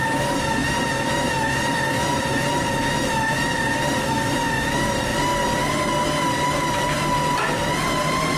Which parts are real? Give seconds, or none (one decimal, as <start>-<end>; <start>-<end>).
0.0-8.4